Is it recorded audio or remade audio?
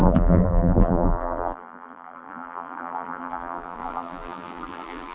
remade